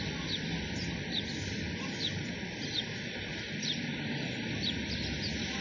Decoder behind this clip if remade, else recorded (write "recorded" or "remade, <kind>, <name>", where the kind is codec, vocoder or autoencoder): recorded